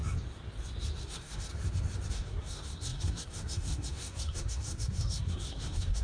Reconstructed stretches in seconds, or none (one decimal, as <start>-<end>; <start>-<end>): 1.0-1.5; 2.1-6.0